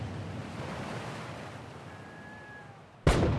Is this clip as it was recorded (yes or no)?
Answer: yes